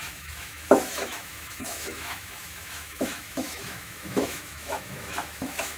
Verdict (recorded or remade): remade